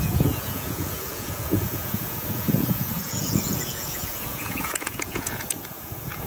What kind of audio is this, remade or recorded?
remade